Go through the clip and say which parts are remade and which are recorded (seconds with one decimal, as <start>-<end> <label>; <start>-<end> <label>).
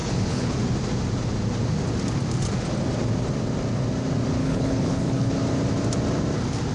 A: 0.0-0.6 remade; 0.6-4.4 recorded; 4.4-5.3 remade; 5.3-6.7 recorded